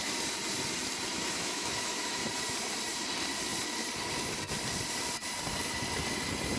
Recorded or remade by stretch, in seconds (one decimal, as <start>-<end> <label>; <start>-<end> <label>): 0.0-1.1 recorded; 1.1-2.2 remade; 2.2-6.6 recorded